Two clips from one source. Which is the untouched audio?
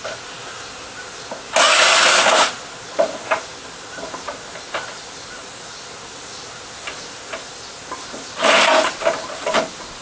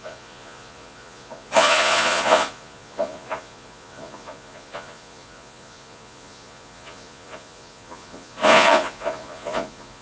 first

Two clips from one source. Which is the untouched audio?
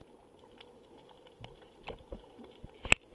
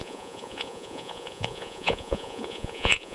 first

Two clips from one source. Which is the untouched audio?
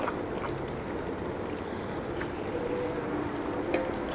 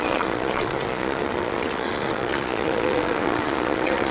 first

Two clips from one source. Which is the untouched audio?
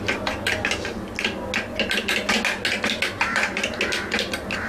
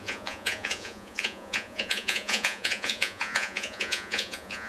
first